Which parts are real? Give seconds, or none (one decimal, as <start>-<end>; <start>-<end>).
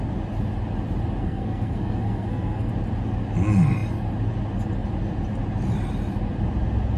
0.0-1.2; 2.7-7.0